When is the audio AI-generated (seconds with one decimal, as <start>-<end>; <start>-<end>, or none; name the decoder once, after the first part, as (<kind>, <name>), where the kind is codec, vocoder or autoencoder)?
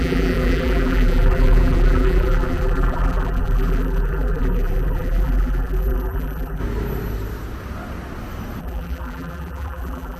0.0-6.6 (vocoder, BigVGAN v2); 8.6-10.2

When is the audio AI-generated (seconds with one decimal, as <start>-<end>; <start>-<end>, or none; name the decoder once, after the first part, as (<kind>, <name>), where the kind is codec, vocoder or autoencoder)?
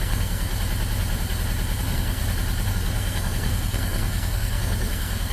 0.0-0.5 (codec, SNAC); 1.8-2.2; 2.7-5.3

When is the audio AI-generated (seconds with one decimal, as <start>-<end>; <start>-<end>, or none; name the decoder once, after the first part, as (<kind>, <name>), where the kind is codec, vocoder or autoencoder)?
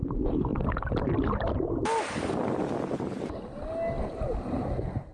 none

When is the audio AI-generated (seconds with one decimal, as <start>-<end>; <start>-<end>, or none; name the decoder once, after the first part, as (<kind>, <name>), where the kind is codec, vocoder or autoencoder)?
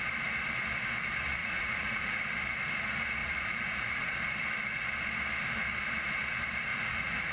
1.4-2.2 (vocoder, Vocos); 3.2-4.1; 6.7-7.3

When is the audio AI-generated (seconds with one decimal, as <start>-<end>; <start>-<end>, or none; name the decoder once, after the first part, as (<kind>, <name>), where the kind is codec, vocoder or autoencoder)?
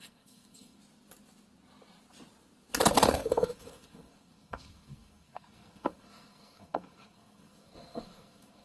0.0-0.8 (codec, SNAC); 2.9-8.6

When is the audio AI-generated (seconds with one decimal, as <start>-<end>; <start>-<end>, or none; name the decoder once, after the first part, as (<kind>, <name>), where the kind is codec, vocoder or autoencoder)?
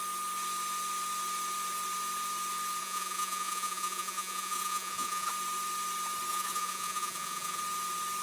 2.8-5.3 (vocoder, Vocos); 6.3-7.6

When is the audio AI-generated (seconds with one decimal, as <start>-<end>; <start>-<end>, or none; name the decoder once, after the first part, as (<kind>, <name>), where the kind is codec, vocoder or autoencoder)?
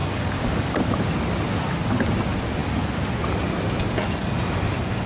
none